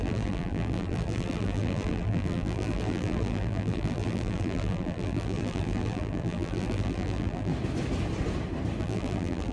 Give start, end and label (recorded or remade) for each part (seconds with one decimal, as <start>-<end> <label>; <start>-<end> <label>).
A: 0.0-7.5 remade; 7.5-8.8 recorded; 8.8-9.5 remade